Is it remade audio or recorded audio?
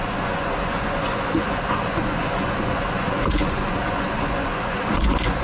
remade